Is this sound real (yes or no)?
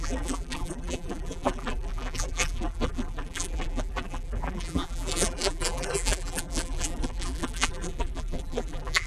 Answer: no